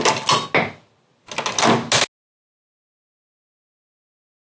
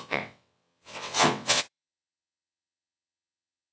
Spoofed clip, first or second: second